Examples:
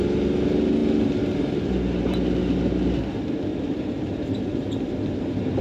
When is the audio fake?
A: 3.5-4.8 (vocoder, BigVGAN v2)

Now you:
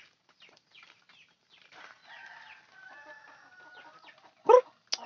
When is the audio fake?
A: 0.0-2.0 (vocoder, BigVGAN v2)

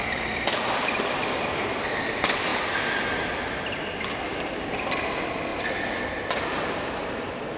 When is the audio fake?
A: 0.0-2.5 (vocoder, BigVGAN v2); 3.8-7.6